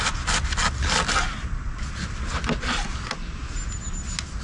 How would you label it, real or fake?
real